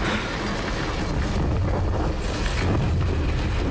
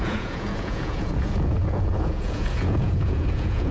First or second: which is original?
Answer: first